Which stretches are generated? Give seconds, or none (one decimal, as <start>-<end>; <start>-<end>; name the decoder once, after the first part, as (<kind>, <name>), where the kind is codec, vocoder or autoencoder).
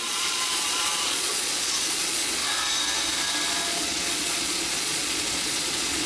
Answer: 0.0-2.4 (vocoder, Vocos); 3.5-6.1